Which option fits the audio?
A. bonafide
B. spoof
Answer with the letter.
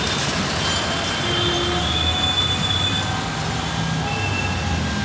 A